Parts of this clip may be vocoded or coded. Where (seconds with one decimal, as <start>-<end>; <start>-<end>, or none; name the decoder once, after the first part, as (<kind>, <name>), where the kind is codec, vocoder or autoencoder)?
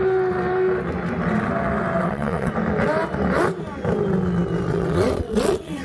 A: 2.0-2.5 (vocoder, WaveNeXt); 4.7-5.8